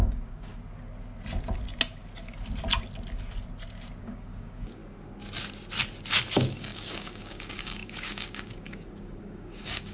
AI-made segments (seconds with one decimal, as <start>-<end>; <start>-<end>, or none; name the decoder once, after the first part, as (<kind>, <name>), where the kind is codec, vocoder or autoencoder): 0.0-0.5 (codec, DAC); 4.0-4.8; 6.3-9.9